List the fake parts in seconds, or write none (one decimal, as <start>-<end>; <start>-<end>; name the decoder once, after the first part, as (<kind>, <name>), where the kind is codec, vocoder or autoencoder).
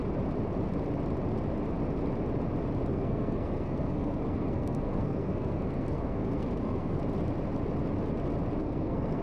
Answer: 2.9-7.0 (codec, SNAC); 8.6-9.2